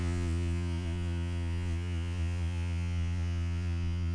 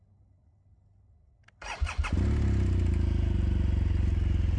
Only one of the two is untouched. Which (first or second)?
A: second